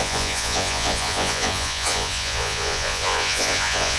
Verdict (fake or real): fake